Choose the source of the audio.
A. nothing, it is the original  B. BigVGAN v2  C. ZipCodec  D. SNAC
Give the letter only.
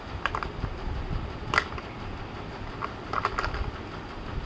A